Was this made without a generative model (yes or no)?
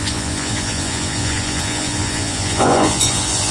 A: no